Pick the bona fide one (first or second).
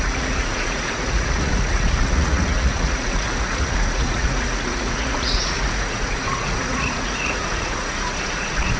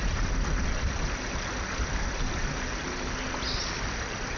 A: second